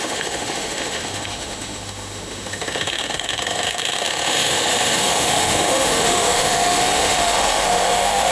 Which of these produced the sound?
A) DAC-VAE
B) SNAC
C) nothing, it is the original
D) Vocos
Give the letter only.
A